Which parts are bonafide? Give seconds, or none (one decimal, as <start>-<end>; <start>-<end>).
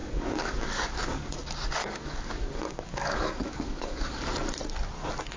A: 1.3-1.8; 4.2-5.4